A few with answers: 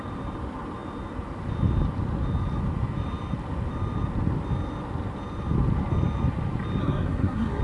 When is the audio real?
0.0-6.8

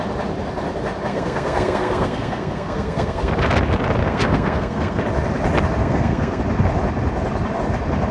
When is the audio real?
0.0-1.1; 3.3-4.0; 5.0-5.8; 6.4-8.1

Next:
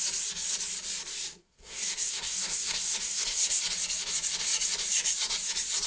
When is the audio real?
0.0-1.1; 3.6-5.9